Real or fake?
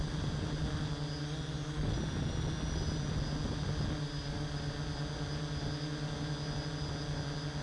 real